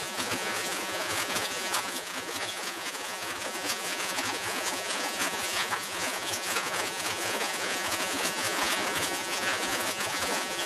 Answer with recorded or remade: remade